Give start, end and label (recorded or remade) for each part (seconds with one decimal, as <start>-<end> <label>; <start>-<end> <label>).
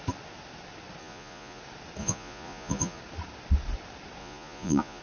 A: 0.0-1.0 recorded; 1.0-1.6 remade; 1.6-2.0 recorded; 2.0-3.0 remade; 3.0-4.2 recorded; 4.2-5.0 remade